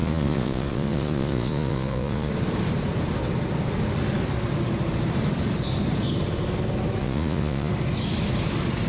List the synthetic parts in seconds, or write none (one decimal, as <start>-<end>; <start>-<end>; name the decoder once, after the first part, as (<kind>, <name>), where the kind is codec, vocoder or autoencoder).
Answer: 0.0-2.3 (vocoder, Vocos); 7.0-7.7